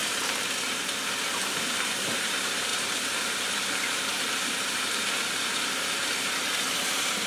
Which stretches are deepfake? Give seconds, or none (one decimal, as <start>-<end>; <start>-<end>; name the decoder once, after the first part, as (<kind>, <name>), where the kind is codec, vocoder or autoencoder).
0.0-7.3 (vocoder, BigVGAN v2)